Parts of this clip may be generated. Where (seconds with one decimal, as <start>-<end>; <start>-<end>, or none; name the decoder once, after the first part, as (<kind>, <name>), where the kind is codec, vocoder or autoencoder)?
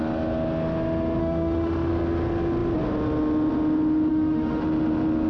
1.2-1.9 (autoencoder, DAC-VAE); 4.1-4.6